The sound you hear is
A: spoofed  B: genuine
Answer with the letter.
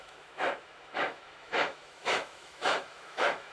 A